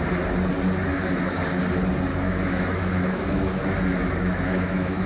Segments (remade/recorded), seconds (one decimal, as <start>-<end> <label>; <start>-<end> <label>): 0.0-0.9 recorded; 0.9-1.4 remade; 1.4-2.1 recorded; 2.1-5.1 remade